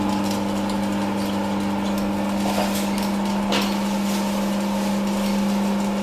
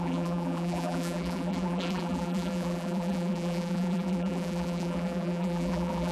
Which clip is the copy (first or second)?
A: second